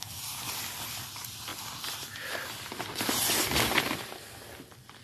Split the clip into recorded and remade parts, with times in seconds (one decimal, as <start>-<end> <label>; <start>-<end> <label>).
0.0-5.0 recorded